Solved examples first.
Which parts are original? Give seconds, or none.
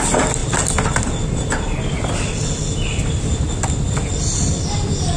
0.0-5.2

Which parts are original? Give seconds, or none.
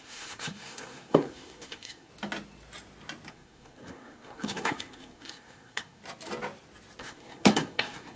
2.1-3.3; 6.0-7.0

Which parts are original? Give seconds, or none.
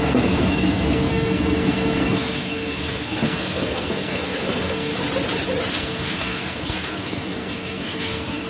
4.9-5.7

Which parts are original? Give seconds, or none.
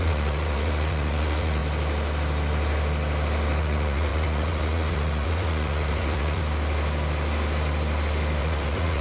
1.6-3.6; 6.4-8.4